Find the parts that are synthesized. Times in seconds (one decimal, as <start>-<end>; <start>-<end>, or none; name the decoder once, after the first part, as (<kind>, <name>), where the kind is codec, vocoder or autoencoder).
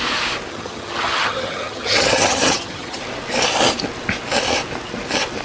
0.5-3.0 (vocoder, HiFi-GAN)